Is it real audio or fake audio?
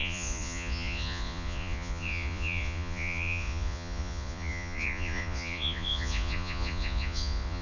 fake